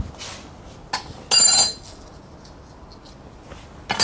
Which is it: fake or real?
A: real